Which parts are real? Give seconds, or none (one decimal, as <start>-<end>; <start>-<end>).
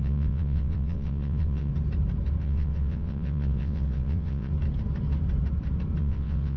1.7-2.4; 4.5-6.0